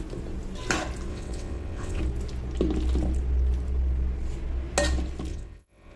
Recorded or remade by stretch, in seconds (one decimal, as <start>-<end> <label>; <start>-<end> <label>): 0.0-1.1 recorded; 1.1-2.0 remade; 2.0-5.3 recorded; 5.3-6.0 remade